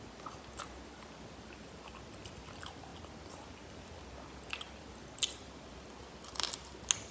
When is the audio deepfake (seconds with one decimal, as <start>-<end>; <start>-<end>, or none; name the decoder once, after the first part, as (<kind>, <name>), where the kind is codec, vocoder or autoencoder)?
none